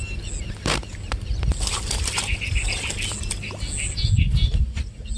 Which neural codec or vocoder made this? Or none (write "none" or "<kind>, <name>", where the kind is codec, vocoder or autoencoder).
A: none